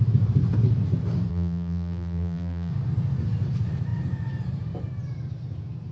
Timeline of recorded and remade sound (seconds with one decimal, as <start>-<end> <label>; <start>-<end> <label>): 0.0-1.3 recorded; 1.3-2.7 remade; 2.7-5.9 recorded